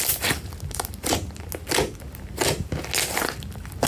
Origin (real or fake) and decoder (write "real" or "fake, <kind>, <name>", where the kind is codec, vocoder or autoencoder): real